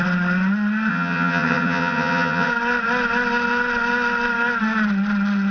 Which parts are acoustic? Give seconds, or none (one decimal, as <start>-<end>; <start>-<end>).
0.0-0.9; 2.5-5.5